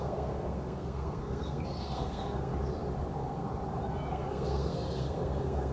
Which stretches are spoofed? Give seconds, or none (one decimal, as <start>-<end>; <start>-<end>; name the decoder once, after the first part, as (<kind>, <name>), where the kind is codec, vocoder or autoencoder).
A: 0.0-2.5 (codec, SNAC); 3.1-3.5; 4.1-5.7